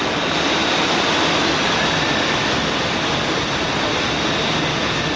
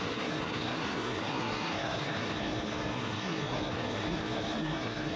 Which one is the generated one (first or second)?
second